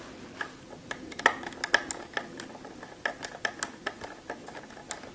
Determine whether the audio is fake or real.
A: real